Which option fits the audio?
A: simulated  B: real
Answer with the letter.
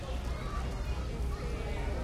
B